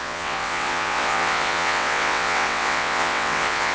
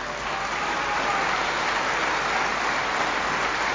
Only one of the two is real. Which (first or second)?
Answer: second